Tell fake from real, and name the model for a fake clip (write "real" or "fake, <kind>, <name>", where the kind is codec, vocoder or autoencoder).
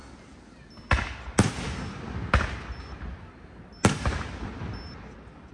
real